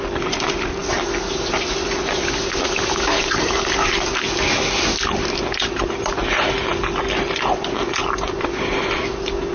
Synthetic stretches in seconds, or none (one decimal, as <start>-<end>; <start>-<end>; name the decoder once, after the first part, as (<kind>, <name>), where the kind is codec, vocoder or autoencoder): none